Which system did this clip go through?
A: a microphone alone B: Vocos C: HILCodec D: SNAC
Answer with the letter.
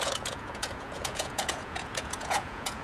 B